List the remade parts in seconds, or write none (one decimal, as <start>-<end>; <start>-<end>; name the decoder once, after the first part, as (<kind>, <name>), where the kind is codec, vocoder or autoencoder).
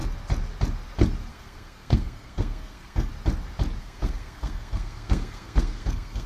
1.3-3.1 (codec, SNAC); 3.8-6.3